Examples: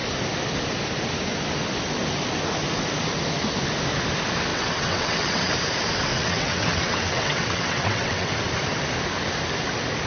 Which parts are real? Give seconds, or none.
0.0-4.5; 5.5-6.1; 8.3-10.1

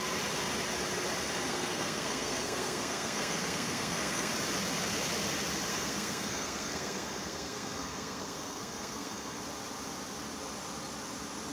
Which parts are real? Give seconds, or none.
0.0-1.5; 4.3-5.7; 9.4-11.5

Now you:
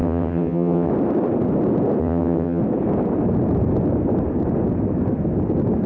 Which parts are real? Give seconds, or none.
0.9-2.0; 2.6-5.9